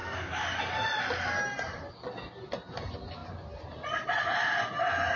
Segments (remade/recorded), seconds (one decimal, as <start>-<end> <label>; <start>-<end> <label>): 0.0-0.6 remade; 0.6-5.2 recorded

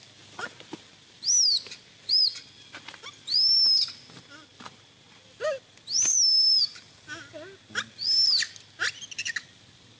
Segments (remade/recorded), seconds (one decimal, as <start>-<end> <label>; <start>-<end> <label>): 0.0-10.0 recorded